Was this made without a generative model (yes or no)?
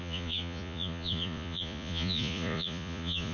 no